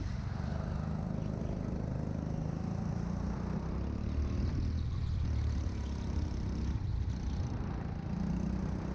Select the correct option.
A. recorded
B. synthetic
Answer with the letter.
A